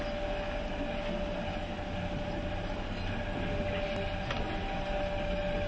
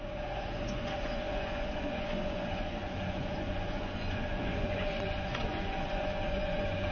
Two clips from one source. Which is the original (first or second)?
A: first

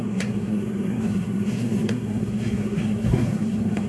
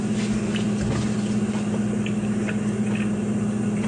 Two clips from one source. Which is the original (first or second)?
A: second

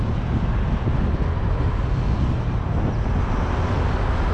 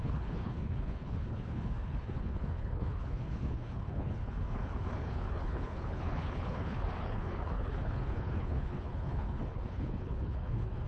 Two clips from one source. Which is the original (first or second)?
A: first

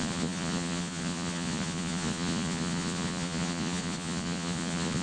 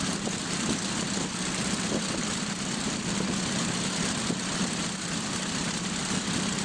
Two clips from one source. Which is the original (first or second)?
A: second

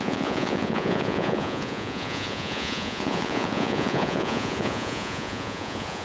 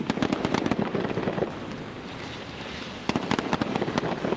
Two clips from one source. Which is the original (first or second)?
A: second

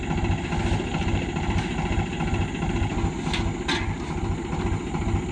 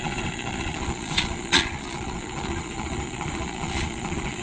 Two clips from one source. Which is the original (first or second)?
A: first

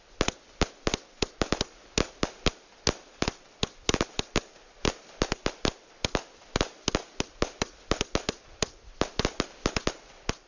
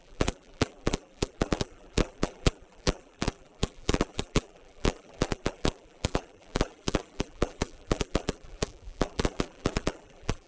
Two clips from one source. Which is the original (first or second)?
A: first